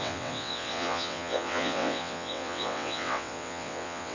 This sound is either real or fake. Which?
fake